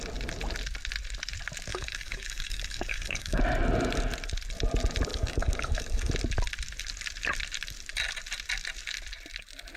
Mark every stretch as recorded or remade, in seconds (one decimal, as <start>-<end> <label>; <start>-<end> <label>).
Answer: 0.0-1.7 recorded; 1.7-3.4 remade; 3.4-5.1 recorded; 5.1-6.1 remade; 6.1-9.8 recorded